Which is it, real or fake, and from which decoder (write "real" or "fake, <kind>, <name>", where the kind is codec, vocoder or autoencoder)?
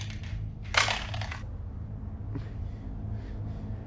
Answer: real